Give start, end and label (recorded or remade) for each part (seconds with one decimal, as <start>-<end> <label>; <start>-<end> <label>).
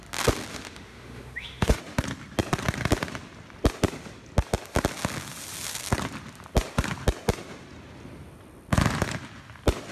0.0-0.5 recorded; 0.5-1.8 remade; 1.8-9.9 recorded